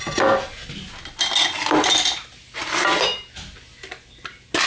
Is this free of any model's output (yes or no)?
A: yes